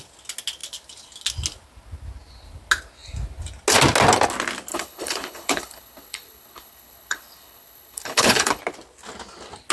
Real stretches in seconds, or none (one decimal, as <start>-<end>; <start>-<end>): 0.0-4.7; 8.6-9.7

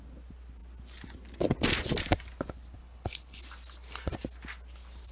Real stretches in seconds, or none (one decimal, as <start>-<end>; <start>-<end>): 0.0-2.8; 3.4-5.1

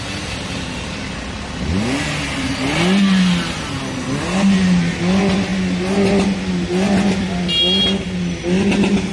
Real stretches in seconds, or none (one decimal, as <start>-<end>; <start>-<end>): 0.0-9.1